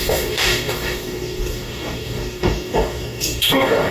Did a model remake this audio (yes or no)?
yes